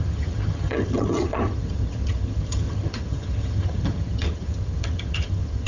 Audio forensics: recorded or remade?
remade